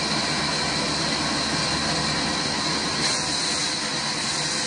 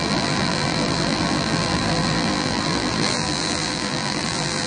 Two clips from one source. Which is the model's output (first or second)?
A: second